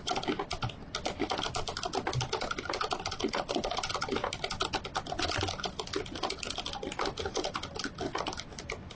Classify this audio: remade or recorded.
recorded